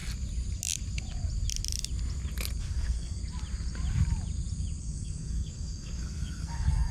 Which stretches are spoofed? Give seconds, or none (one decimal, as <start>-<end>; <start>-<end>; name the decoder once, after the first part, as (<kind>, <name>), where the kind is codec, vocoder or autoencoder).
2.6-3.2 (codec, SNAC); 4.8-6.9